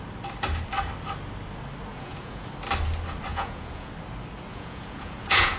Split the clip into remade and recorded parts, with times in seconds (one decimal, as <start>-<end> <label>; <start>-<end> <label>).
0.0-1.9 recorded; 1.9-2.5 remade; 2.5-3.3 recorded; 3.3-3.9 remade; 3.9-4.5 recorded; 4.5-5.6 remade